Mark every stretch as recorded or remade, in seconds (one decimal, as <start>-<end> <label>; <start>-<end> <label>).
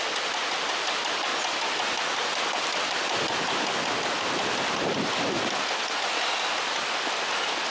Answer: 0.0-7.7 recorded